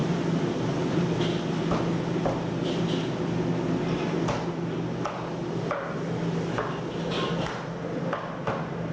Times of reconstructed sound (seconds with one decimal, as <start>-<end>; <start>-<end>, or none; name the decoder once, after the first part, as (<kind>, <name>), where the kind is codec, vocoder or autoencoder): 0.0-1.2 (vocoder, BigVGAN v2)